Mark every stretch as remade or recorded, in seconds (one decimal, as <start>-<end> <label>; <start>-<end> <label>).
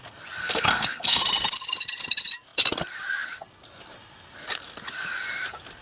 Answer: 0.0-0.4 recorded; 0.4-1.2 remade; 1.2-5.8 recorded